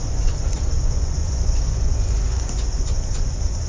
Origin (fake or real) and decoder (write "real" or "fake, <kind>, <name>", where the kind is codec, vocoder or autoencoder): fake, vocoder, Vocos